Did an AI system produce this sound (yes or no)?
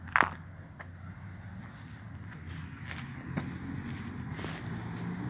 no